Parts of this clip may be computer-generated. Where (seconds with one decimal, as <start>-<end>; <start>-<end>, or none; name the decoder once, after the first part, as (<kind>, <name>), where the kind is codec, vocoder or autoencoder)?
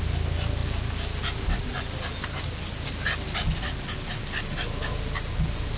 none